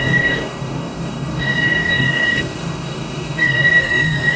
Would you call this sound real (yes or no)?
no